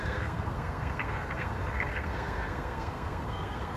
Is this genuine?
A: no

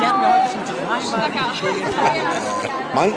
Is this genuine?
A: yes